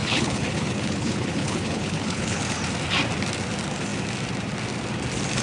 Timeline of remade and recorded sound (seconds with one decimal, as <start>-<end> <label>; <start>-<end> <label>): 0.0-2.4 remade; 2.4-5.4 recorded